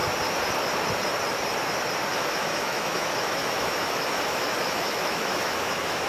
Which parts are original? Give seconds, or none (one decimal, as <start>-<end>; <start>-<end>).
0.0-2.1